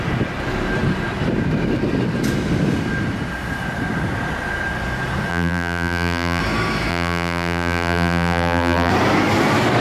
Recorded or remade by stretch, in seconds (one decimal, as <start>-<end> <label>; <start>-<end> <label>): 0.0-5.3 recorded; 5.3-6.4 remade; 6.4-6.9 recorded; 6.9-8.9 remade; 8.9-9.8 recorded